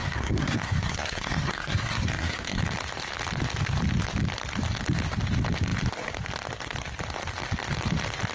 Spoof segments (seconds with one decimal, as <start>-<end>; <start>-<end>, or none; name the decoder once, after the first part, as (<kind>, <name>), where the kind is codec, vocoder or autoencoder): 0.0-2.6 (codec, SNAC)